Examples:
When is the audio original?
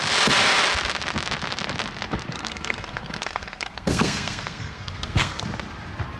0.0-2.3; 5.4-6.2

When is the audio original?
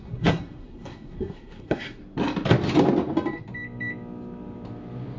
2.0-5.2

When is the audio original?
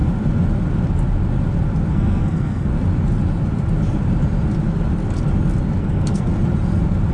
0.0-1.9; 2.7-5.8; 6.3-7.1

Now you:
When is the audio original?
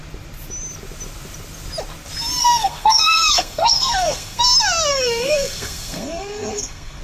0.0-2.4; 4.4-4.9